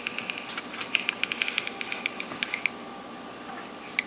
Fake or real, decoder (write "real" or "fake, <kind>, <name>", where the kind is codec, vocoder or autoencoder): real